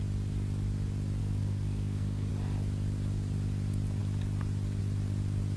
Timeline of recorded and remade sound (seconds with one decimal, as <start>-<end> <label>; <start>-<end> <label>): 0.0-1.2 recorded; 1.2-2.3 remade; 2.3-5.6 recorded